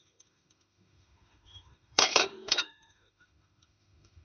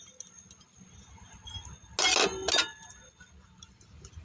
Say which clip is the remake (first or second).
first